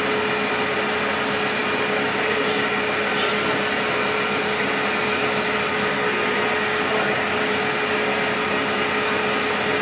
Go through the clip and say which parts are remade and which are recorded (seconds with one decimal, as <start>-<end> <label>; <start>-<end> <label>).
0.0-9.8 recorded